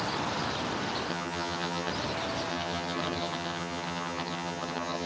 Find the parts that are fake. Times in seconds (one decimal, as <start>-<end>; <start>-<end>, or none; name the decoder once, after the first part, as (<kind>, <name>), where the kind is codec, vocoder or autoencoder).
1.1-1.9 (vocoder, HiFi-GAN); 2.5-5.1